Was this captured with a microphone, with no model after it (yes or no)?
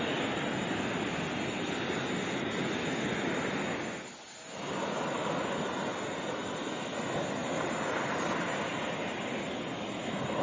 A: yes